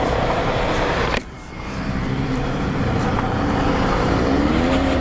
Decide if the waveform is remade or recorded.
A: remade